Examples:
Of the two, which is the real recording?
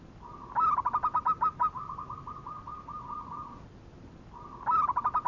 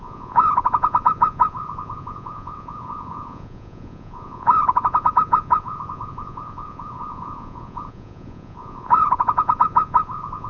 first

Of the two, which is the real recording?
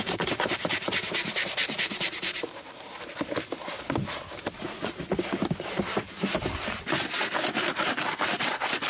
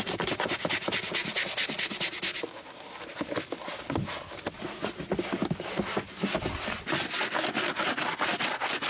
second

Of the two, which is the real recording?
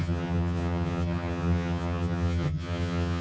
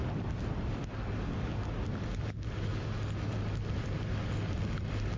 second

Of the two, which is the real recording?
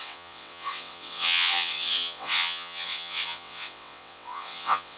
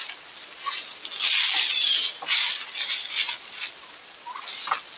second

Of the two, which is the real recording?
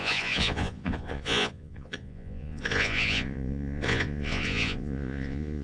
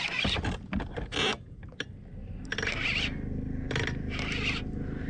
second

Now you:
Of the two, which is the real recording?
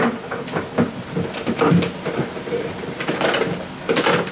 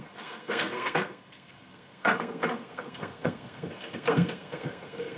first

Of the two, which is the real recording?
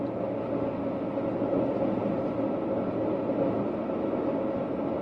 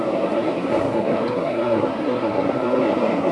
first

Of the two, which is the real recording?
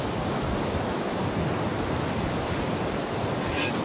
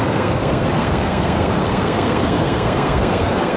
first